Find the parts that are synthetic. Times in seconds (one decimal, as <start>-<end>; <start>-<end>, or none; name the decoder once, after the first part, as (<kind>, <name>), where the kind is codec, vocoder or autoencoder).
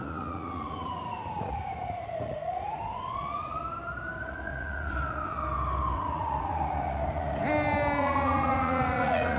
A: 0.0-3.6 (vocoder, Vocos); 4.2-5.4; 5.9-7.4; 8.0-9.4